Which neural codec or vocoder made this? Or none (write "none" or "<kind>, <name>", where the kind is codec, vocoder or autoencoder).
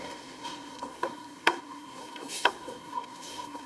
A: codec, SNAC